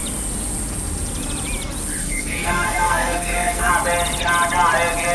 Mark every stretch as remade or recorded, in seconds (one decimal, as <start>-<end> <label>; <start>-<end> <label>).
0.0-2.0 recorded; 2.0-3.7 remade; 3.7-5.1 recorded